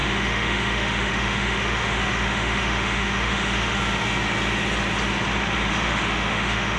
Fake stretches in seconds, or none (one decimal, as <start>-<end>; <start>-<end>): 0.0-3.8; 5.7-6.8